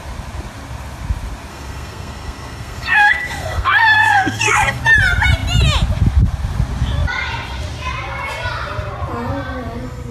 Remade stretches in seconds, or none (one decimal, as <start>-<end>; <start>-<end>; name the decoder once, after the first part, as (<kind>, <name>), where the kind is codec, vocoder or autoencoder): 1.5-4.8 (codec, SNAC)